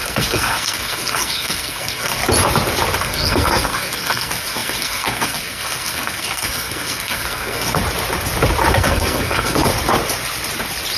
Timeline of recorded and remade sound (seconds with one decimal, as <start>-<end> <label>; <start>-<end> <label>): 0.0-2.2 remade; 2.2-3.0 recorded; 3.0-7.8 remade; 7.8-8.7 recorded; 8.7-9.7 remade; 9.7-11.0 recorded